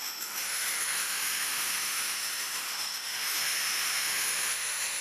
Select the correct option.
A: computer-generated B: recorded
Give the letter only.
A